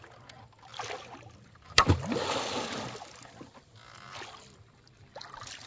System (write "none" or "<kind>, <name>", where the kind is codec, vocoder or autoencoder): none